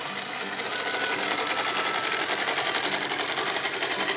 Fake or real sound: real